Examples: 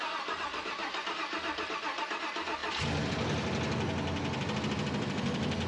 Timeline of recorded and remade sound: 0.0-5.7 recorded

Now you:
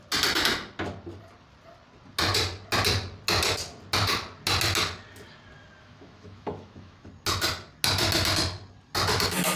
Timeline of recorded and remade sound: 0.0-5.8 recorded; 5.8-7.1 remade; 7.1-9.6 recorded

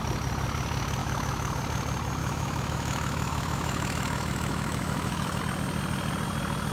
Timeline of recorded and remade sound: 0.0-1.0 recorded; 1.0-1.6 remade; 1.6-2.2 recorded; 2.2-5.4 remade; 5.4-6.7 recorded